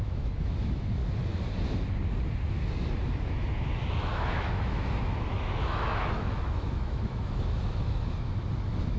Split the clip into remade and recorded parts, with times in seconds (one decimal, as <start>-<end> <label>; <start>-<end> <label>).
0.0-1.0 remade; 1.0-3.3 recorded; 3.3-9.0 remade